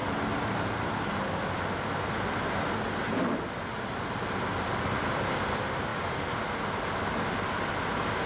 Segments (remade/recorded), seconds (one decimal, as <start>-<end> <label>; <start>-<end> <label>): 0.0-8.3 recorded